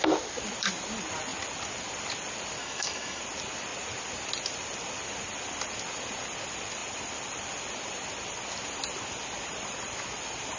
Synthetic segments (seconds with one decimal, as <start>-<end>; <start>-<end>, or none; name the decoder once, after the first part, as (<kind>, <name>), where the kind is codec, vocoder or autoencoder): 2.6-3.2 (autoencoder, DAC-VAE)